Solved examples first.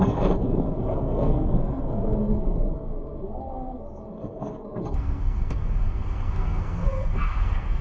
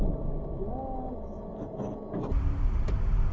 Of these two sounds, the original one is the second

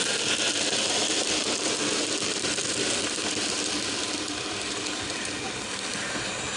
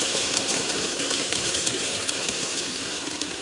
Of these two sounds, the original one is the first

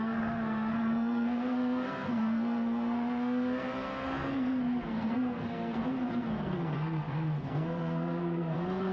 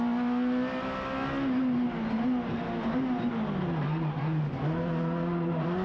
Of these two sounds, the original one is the second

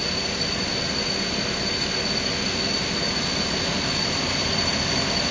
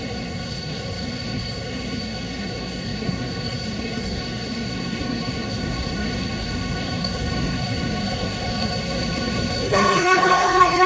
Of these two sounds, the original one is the first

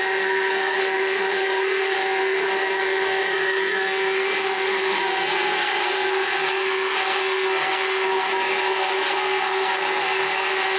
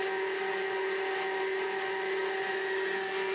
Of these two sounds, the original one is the second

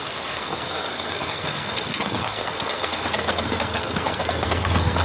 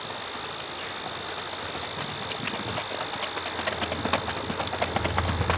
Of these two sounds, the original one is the second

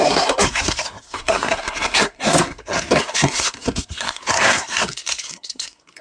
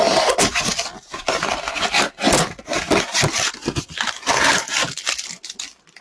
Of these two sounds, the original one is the second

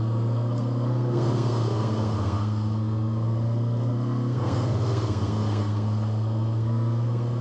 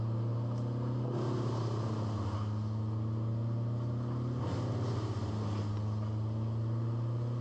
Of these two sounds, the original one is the second